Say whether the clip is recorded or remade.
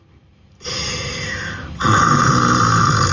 recorded